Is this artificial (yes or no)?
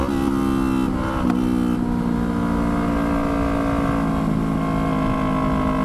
no